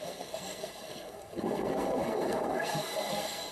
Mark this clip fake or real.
fake